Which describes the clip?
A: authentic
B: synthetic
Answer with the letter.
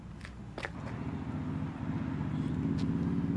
A